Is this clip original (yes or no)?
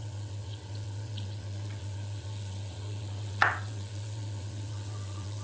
no